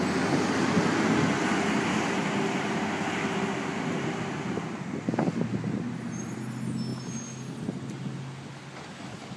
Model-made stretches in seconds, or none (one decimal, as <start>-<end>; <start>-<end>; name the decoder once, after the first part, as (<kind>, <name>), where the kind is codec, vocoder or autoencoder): none